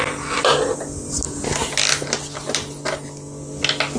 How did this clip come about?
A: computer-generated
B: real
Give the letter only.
B